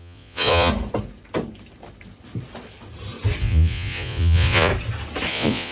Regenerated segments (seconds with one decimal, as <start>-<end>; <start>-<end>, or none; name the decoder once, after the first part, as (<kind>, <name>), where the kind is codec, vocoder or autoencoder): 0.0-0.7 (vocoder, Vocos); 3.4-4.7; 5.3-5.7